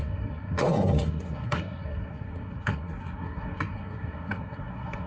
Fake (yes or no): yes